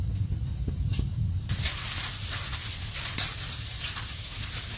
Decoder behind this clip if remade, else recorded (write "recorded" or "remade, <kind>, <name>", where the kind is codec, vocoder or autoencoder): recorded